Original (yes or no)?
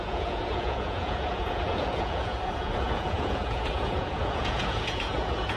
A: no